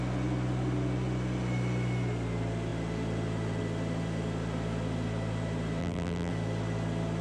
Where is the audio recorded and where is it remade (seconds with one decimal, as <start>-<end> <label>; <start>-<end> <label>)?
0.0-5.8 recorded; 5.8-6.3 remade; 6.3-7.2 recorded